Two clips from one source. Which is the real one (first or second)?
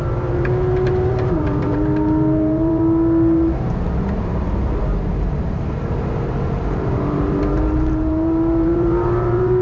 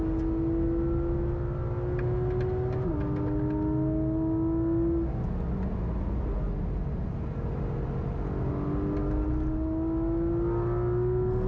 second